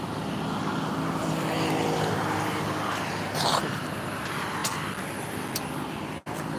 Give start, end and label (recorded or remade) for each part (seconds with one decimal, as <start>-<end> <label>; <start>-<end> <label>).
0.0-6.6 recorded